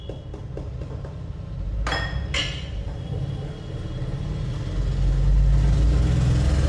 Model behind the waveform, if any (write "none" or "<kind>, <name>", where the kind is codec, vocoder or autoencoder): none